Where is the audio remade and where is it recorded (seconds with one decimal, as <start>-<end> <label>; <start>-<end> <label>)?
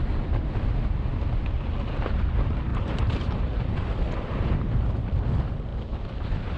0.0-2.7 recorded; 2.7-3.6 remade; 3.6-6.6 recorded